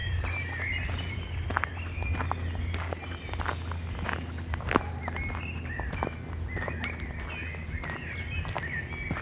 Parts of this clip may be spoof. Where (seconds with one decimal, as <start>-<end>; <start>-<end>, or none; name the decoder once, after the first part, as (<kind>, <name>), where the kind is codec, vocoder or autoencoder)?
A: none